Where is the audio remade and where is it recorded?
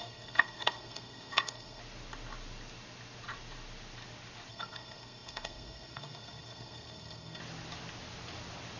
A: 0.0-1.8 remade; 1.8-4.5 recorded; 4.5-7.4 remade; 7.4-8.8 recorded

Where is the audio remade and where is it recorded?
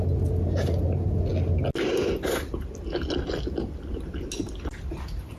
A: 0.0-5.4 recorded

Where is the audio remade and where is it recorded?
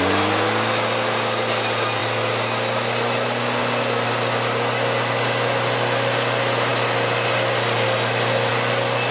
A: 0.0-9.1 recorded